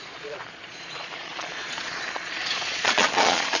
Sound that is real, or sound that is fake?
fake